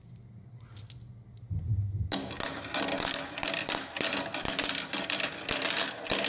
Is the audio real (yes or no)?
yes